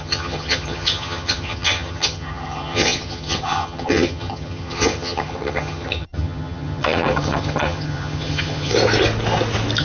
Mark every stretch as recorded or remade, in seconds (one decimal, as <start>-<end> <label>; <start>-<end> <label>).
0.0-8.7 remade; 8.7-9.8 recorded